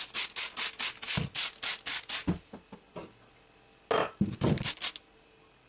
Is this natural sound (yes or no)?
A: yes